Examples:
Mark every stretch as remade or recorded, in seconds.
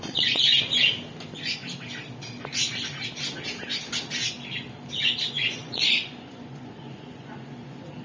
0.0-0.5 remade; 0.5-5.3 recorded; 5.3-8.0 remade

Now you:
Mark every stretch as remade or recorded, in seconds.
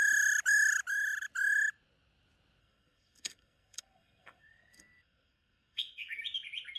0.0-2.6 recorded; 2.6-6.2 remade; 6.2-6.8 recorded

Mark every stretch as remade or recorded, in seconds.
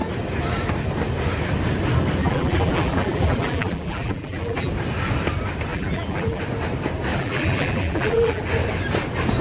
0.0-2.2 recorded; 2.2-4.7 remade; 4.7-5.7 recorded; 5.7-6.4 remade; 6.4-7.1 recorded; 7.1-8.4 remade; 8.4-9.4 recorded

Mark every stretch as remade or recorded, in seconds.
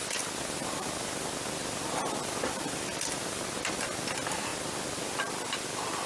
0.0-3.7 remade; 3.7-4.5 recorded; 4.5-5.3 remade; 5.3-6.1 recorded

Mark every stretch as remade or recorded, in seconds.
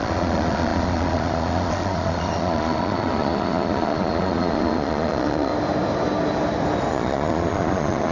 0.0-5.5 remade; 5.5-6.9 recorded; 6.9-8.1 remade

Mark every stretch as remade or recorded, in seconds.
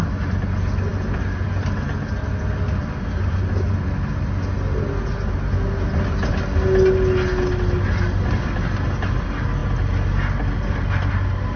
0.0-11.6 recorded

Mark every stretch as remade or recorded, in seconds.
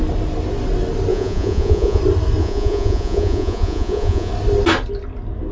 0.0-1.1 recorded; 1.1-2.0 remade; 2.0-2.4 recorded; 2.4-4.3 remade; 4.3-5.5 recorded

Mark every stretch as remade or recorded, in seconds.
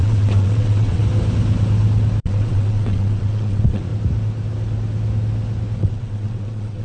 0.0-1.0 remade; 1.0-2.2 recorded; 2.2-3.9 remade; 3.9-5.8 recorded; 5.8-6.8 remade